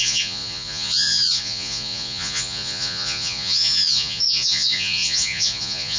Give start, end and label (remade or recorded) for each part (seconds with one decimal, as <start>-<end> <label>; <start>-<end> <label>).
0.0-6.0 remade

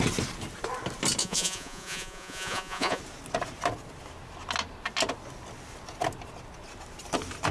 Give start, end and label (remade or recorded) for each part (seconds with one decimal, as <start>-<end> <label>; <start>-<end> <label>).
0.0-1.2 recorded; 1.2-3.0 remade; 3.0-7.5 recorded

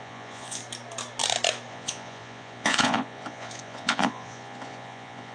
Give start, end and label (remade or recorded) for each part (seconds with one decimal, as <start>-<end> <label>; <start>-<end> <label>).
0.0-0.6 remade; 0.6-1.7 recorded; 1.7-5.3 remade

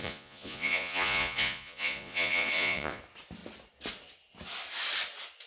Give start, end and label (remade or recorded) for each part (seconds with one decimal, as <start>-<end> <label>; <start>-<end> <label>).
0.0-3.0 remade; 3.0-5.5 recorded